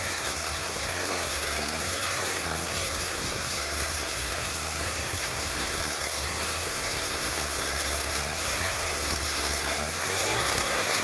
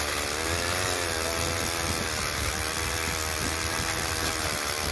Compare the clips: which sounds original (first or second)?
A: second